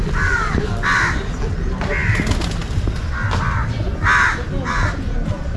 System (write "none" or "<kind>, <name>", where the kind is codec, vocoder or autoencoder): none